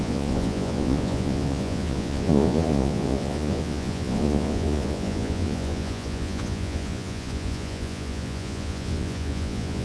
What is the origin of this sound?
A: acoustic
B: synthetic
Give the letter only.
B